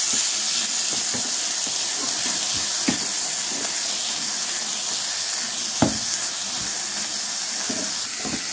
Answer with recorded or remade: recorded